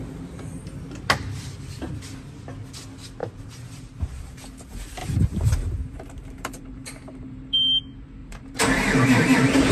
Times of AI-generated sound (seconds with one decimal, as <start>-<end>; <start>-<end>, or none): 3.2-4.5; 5.0-7.8; 8.2-9.7